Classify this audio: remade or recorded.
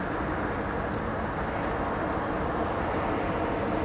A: recorded